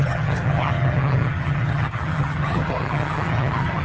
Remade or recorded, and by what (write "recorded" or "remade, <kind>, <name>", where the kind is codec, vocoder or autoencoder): remade, vocoder, HiFi-GAN